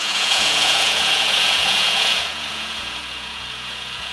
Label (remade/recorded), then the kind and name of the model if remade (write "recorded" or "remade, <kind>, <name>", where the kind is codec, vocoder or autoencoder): remade, vocoder, Vocos